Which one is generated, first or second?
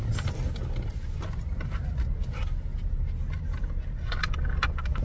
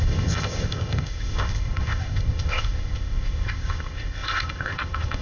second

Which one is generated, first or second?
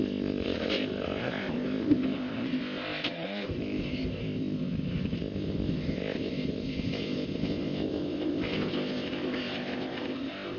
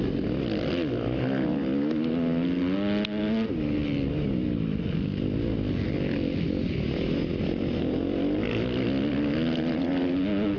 first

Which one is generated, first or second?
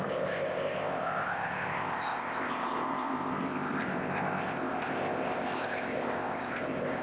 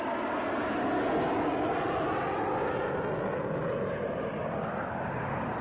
first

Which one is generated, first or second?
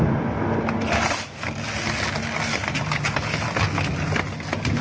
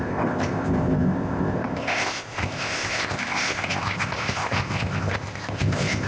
second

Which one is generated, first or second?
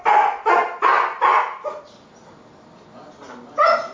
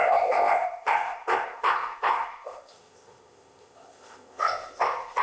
second